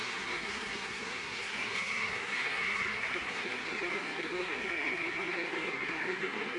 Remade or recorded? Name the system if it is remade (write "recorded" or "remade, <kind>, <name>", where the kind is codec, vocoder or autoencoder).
remade, codec, SNAC